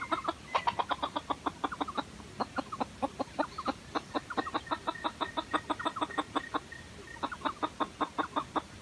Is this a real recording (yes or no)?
yes